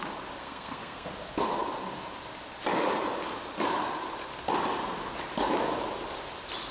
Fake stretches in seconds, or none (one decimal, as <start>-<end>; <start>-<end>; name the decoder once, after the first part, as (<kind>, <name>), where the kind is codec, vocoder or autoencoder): 0.4-1.1 (codec, SNAC)